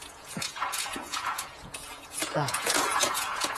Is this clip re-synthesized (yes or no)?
yes